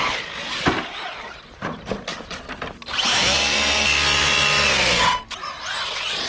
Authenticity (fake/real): real